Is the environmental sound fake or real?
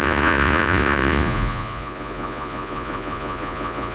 fake